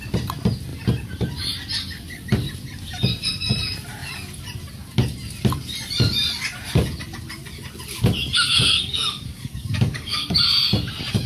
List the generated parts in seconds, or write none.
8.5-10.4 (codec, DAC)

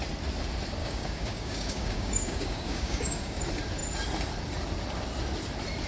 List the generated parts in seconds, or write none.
0.8-3.4 (codec, DAC)

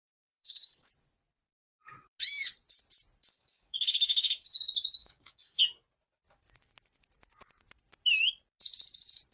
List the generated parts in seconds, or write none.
0.0-0.9 (codec, DAC); 3.3-4.6; 5.0-5.6

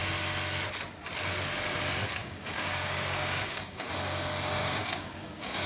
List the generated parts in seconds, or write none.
2.2-3.9 (codec, DAC); 4.6-5.7

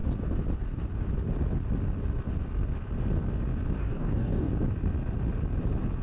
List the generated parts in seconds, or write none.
3.8-4.5 (codec, DAC)

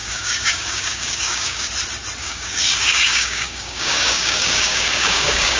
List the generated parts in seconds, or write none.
0.0-1.7 (codec, DAC); 2.2-5.6